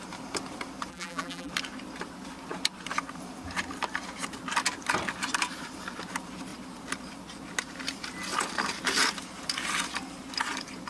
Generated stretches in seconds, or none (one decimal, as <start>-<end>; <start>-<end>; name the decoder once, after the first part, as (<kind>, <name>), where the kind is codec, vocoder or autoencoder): 0.9-1.5 (vocoder, BigVGAN v2)